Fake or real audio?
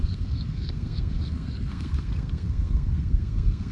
fake